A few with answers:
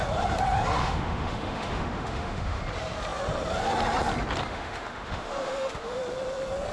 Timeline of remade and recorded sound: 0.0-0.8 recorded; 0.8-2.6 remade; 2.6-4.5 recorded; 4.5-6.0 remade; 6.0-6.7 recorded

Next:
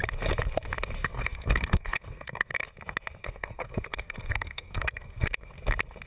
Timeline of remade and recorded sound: 0.0-1.0 recorded; 1.0-2.5 remade; 2.5-3.2 recorded; 3.2-5.5 remade; 5.5-6.1 recorded

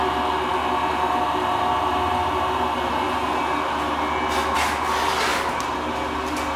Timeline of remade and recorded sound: 0.0-6.6 recorded

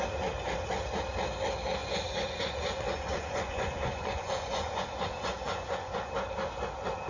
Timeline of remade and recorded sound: 0.0-1.8 recorded; 1.8-6.1 remade; 6.1-7.1 recorded

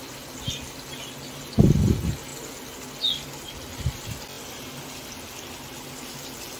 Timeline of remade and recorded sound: 0.0-6.6 recorded

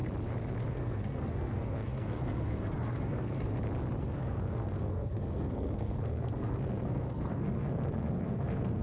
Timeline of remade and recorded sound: 0.0-0.7 recorded; 0.7-3.5 remade; 3.5-4.0 recorded; 4.0-8.8 remade

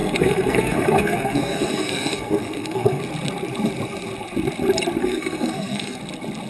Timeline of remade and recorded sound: 0.0-3.0 remade; 3.0-5.0 recorded; 5.0-6.0 remade; 6.0-6.5 recorded

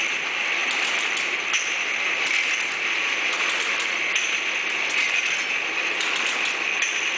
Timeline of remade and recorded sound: 0.0-7.2 recorded